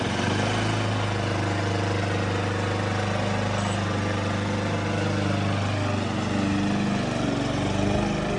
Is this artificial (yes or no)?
no